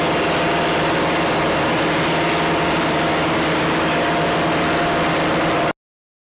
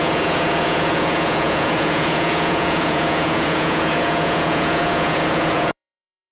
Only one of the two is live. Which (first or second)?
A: first